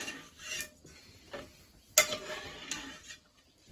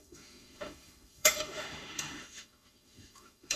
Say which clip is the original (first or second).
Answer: first